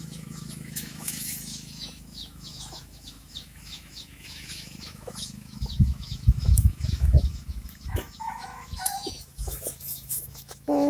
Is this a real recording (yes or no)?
no